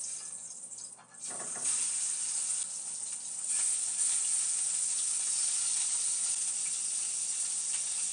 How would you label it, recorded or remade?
recorded